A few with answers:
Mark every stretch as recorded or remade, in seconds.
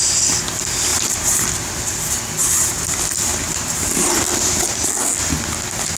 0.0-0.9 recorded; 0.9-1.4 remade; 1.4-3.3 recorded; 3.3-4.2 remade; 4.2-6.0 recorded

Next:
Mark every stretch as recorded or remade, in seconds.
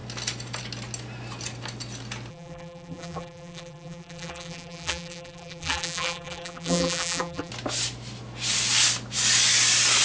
0.0-2.3 recorded; 2.3-7.5 remade; 7.5-10.0 recorded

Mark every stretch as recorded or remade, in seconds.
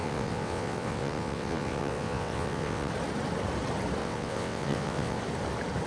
0.0-2.9 remade; 2.9-4.0 recorded; 4.0-5.2 remade; 5.2-5.9 recorded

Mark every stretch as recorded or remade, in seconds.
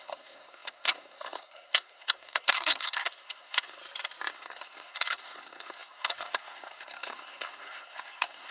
0.0-3.8 remade; 3.8-4.3 recorded; 4.3-8.5 remade